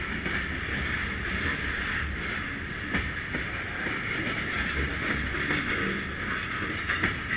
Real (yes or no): yes